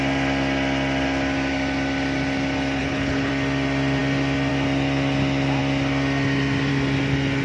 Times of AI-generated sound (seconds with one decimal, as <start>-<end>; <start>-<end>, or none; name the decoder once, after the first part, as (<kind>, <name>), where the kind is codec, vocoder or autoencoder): 2.8-3.3 (codec, HILCodec)